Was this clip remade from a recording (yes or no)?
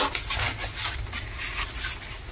no